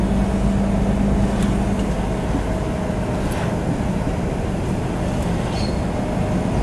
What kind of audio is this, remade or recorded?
recorded